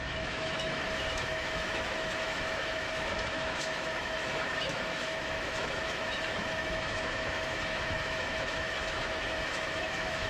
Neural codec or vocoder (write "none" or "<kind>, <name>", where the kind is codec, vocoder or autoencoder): autoencoder, DAC-VAE